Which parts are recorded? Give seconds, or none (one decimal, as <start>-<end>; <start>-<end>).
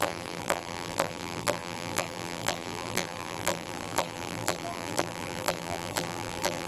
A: none